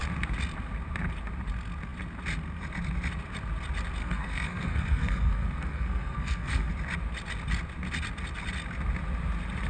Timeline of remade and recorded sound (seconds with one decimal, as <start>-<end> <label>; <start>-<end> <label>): 0.0-4.0 recorded; 4.0-6.7 remade; 6.7-9.7 recorded